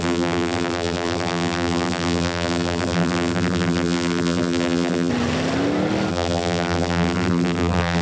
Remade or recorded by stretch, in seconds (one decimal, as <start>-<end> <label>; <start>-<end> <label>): 0.0-5.1 remade; 5.1-6.1 recorded; 6.1-8.0 remade